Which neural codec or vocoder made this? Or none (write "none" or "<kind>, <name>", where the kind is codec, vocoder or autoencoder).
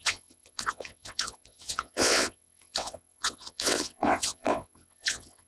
vocoder, WaveNeXt